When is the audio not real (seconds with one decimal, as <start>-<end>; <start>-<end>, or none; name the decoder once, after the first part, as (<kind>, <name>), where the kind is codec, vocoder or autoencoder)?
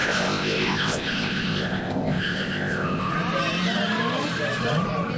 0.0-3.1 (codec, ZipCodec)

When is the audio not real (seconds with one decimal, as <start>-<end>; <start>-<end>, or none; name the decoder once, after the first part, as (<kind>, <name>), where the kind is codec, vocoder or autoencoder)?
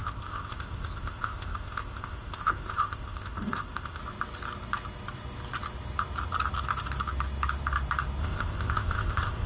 0.0-4.0 (codec, ZipCodec); 8.2-9.5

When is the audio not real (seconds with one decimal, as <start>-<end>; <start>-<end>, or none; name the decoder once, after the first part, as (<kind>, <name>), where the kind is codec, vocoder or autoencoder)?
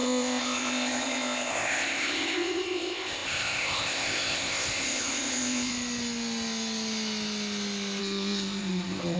0.0-5.7 (codec, ZipCodec); 8.0-9.2